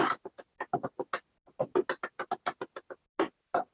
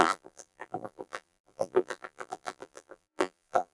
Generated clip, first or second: second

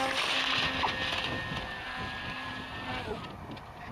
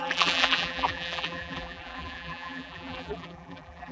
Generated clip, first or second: second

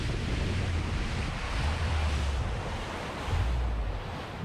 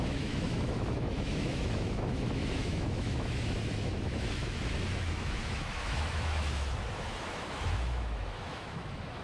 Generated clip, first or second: second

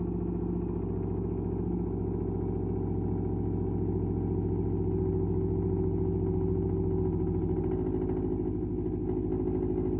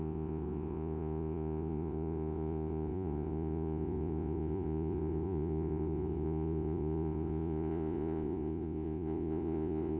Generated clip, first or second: second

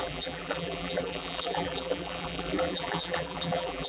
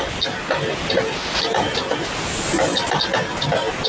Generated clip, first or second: first